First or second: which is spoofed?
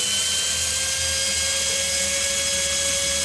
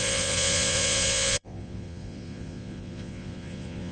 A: second